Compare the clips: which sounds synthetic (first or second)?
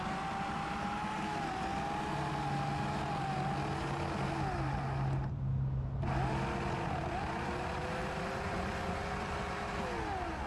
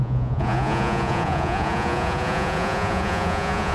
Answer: second